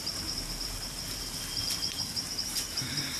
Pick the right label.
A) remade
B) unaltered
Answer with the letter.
A